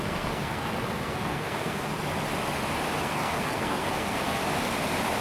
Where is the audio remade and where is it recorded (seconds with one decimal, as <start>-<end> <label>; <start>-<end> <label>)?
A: 0.0-1.9 remade; 1.9-3.0 recorded; 3.0-4.4 remade; 4.4-5.2 recorded

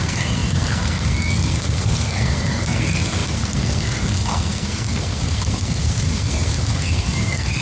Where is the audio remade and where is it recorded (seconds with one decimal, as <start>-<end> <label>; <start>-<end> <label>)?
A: 0.0-7.6 remade

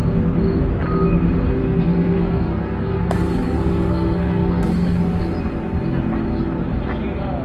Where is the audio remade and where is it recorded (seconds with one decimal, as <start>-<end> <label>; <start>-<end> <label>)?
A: 0.0-1.6 recorded; 1.6-5.0 remade; 5.0-7.4 recorded

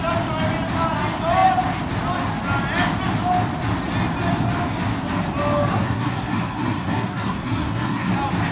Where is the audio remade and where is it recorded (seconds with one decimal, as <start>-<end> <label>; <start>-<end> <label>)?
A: 0.0-5.7 recorded; 5.7-8.1 remade; 8.1-8.5 recorded

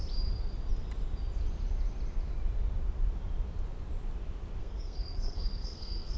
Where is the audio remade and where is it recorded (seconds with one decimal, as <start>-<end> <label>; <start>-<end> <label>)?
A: 0.0-4.6 recorded; 4.6-6.2 remade

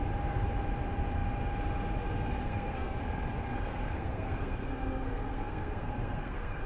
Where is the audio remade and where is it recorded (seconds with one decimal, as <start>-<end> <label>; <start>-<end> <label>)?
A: 0.0-2.4 recorded; 2.4-3.0 remade; 3.0-3.5 recorded; 3.5-6.7 remade

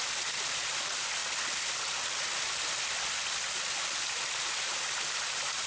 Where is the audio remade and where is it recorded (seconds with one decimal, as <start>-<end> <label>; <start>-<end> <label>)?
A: 0.0-5.7 recorded

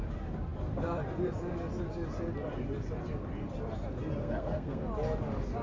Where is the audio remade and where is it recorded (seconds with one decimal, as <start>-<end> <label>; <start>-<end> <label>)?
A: 0.0-4.2 recorded; 4.2-4.8 remade; 4.8-5.6 recorded